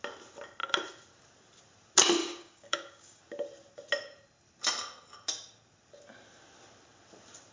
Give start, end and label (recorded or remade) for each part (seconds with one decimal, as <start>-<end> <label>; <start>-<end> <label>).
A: 0.0-2.2 recorded; 2.2-3.2 remade; 3.2-7.5 recorded